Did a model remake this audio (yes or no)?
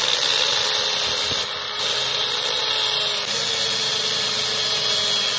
no